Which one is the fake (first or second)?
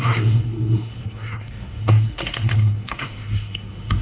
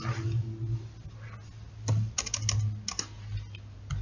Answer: first